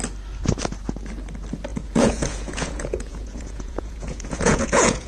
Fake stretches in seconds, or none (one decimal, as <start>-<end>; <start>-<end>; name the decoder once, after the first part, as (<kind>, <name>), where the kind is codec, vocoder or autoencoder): 1.7-5.1 (vocoder, Vocos)

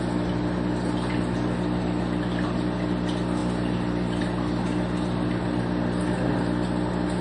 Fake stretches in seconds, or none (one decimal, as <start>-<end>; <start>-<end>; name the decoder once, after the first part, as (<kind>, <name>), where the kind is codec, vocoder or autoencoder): none

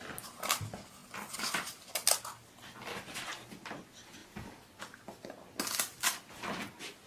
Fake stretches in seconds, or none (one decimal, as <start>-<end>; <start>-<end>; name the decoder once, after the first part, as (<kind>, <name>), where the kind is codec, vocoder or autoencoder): none

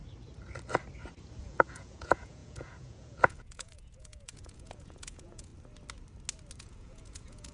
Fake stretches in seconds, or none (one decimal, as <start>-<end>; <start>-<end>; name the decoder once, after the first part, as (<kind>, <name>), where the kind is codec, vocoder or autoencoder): 1.4-5.5 (vocoder, Vocos); 6.6-7.5

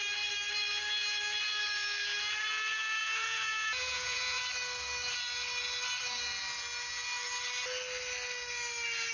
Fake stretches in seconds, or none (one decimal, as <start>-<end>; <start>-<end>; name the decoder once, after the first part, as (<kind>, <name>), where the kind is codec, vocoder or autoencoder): 3.0-4.4 (vocoder, Vocos)